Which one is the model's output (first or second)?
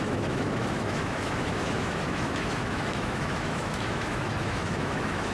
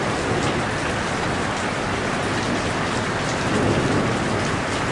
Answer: first